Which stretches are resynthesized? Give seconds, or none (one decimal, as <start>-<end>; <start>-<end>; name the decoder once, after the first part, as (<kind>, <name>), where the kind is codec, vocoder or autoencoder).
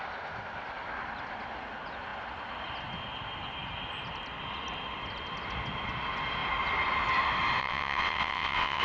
7.6-8.8 (vocoder, WaveNeXt)